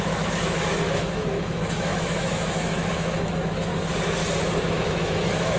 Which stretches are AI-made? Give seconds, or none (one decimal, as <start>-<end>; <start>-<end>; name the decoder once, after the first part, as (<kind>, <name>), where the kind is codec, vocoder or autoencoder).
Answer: 0.0-3.7 (autoencoder, DAC-VAE); 4.4-5.6